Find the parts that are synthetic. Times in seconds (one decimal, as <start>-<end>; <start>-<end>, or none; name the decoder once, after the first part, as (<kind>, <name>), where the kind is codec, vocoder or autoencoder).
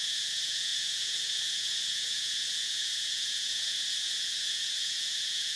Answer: 0.0-5.6 (vocoder, Vocos)